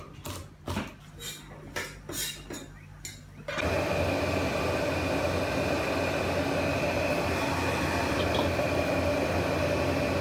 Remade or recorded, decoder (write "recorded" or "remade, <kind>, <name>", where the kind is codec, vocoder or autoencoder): recorded